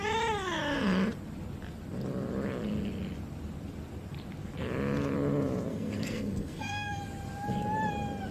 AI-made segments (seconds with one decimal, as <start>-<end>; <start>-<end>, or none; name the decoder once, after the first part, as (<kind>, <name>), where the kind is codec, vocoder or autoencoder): 5.7-7.0 (codec, SNAC)